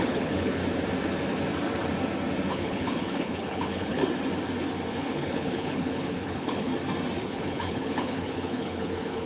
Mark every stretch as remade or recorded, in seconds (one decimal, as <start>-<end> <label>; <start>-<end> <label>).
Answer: 0.0-0.6 remade; 0.6-2.5 recorded; 2.5-4.0 remade; 4.0-4.9 recorded; 4.9-6.7 remade; 6.7-7.2 recorded; 7.2-9.3 remade